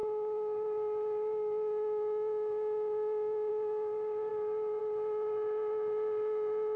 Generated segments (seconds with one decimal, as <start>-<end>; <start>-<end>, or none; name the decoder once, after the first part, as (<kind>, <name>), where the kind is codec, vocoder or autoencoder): none